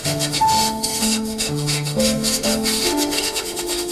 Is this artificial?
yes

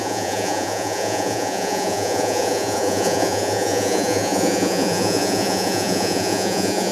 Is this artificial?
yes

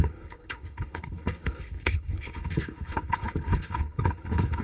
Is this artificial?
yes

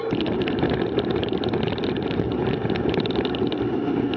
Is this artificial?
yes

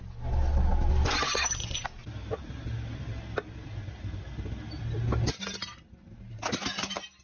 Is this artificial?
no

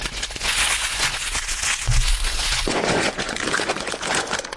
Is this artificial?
yes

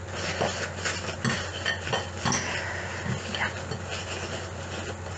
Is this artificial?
no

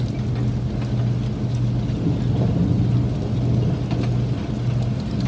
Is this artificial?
no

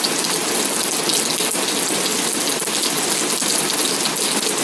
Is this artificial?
no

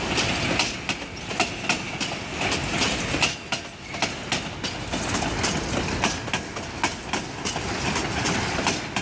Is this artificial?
no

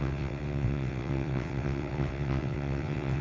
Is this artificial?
yes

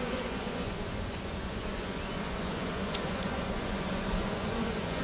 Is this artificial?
yes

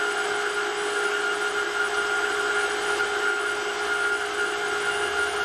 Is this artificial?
no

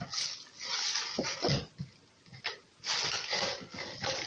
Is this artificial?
no